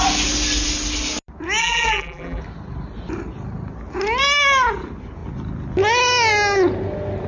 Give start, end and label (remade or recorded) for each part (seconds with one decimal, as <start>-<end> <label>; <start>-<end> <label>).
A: 0.0-1.6 recorded; 1.6-2.4 remade; 2.4-7.3 recorded